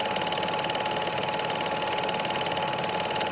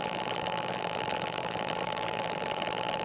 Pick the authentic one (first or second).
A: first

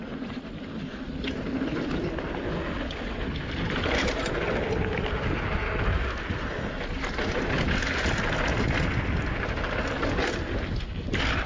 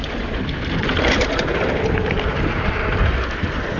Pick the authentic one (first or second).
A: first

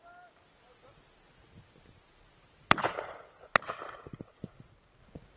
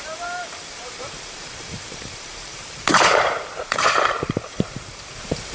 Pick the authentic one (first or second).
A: first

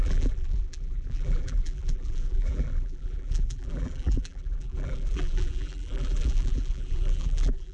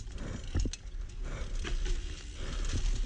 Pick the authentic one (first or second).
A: second